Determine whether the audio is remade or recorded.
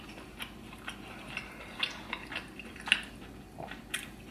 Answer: recorded